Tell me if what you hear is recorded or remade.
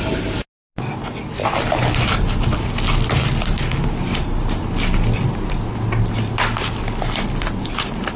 recorded